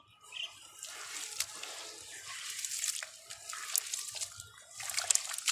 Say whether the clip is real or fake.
real